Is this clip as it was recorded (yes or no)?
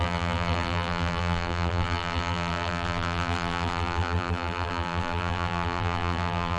no